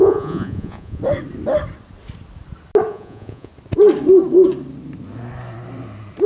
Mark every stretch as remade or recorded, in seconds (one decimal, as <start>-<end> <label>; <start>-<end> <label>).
0.0-1.0 remade; 1.0-2.9 recorded; 2.9-3.5 remade; 3.5-6.3 recorded